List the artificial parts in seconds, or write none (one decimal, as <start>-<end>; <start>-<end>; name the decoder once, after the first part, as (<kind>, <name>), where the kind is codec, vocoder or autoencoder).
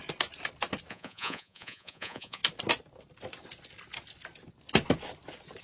0.9-2.4 (vocoder, Vocos)